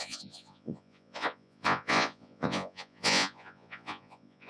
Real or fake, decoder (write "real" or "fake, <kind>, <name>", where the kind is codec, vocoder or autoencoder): fake, vocoder, Vocos